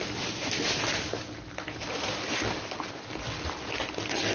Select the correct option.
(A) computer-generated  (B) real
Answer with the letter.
B